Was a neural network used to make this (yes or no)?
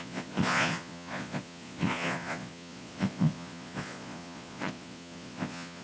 yes